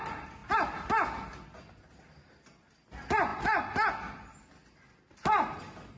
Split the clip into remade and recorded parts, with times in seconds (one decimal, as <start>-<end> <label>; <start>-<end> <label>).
0.0-6.0 recorded